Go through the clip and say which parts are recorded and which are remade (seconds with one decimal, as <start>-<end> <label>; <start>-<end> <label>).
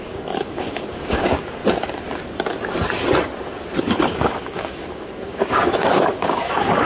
0.0-1.6 remade; 1.6-3.8 recorded; 3.8-6.9 remade